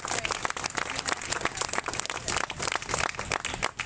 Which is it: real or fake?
real